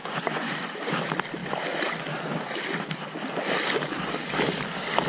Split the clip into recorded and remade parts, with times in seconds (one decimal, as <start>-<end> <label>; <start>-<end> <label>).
0.0-0.5 remade; 0.5-5.1 recorded